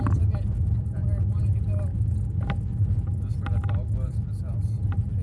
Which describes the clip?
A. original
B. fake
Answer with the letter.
A